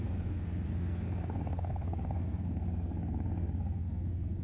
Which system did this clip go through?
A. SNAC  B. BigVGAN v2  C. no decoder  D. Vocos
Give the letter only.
A